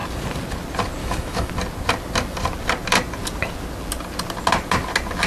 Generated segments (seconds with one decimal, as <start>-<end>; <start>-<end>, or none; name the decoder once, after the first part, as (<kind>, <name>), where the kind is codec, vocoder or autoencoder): 1.0-1.5 (autoencoder, DAC-VAE)